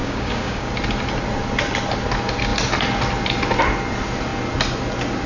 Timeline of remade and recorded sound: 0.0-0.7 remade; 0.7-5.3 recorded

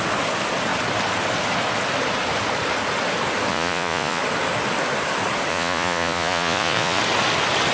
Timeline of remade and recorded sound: 0.0-3.5 recorded; 3.5-4.2 remade; 4.2-5.5 recorded; 5.5-7.0 remade; 7.0-7.7 recorded

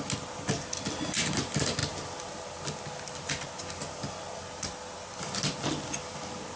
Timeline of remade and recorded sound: 0.0-6.6 recorded

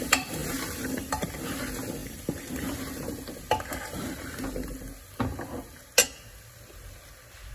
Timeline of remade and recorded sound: 0.0-0.4 recorded; 0.4-1.1 remade; 1.1-2.0 recorded; 2.0-2.5 remade; 2.5-7.5 recorded